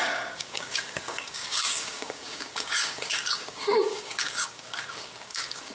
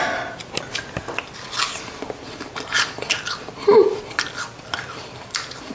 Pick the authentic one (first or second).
second